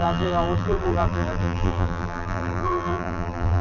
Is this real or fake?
fake